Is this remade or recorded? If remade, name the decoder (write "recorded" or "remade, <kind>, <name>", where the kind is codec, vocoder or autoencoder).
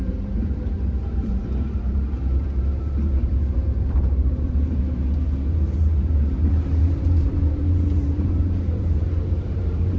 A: remade, vocoder, BigVGAN v2